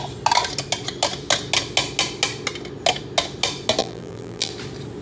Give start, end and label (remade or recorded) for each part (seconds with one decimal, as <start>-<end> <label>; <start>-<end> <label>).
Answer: 0.0-3.8 recorded; 3.8-4.5 remade; 4.5-5.0 recorded